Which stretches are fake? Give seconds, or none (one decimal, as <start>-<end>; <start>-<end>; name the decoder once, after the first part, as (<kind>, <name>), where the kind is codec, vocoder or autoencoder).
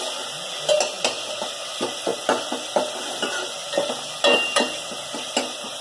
none